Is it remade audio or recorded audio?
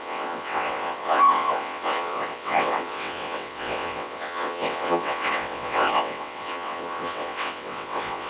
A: remade